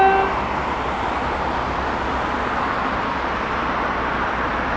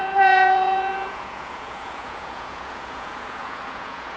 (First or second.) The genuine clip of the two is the first